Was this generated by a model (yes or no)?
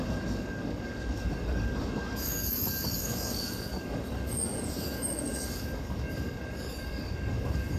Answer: yes